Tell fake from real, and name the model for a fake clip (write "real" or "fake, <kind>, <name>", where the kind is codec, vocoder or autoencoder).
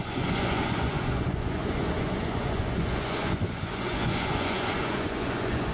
fake, vocoder, Vocos